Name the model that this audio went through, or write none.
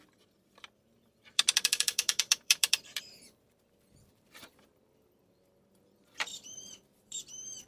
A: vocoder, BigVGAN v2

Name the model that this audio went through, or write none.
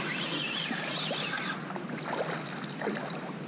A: none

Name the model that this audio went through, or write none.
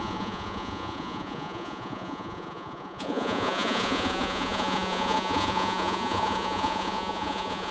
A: vocoder, Vocos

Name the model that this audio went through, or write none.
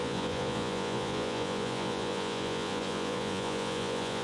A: vocoder, Vocos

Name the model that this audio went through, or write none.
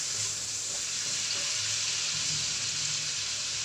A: none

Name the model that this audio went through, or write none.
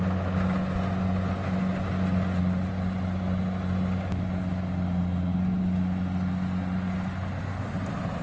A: none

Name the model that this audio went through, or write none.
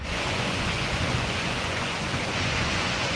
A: vocoder, Vocos